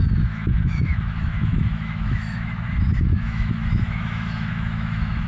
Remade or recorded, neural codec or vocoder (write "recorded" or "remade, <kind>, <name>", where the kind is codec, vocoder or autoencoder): remade, autoencoder, DAC-VAE